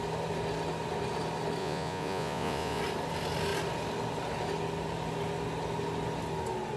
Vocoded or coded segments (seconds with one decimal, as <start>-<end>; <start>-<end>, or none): 1.6-2.8